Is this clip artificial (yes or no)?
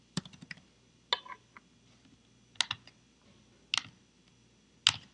no